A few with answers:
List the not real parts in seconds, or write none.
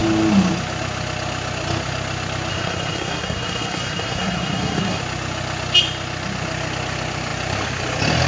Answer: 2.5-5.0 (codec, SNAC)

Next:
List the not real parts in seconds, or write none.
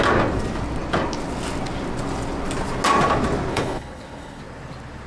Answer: 3.5-4.4 (codec, HILCodec)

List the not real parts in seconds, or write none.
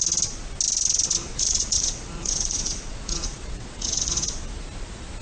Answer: 1.2-4.3 (vocoder, Vocos)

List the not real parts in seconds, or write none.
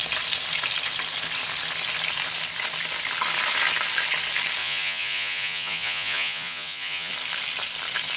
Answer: 4.6-7.1 (vocoder, Vocos)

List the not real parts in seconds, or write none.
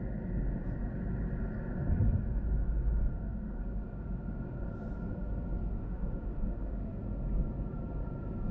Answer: 3.1-3.6 (autoencoder, DAC-VAE); 5.7-7.0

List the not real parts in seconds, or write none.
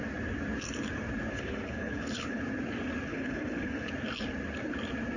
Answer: 1.3-2.4 (codec, HILCodec); 3.1-3.9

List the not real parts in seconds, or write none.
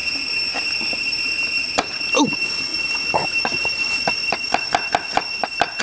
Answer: none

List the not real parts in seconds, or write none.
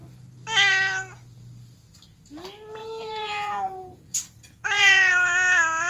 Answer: 2.8-5.1 (vocoder, Vocos)